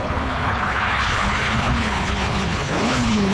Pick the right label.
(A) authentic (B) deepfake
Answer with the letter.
B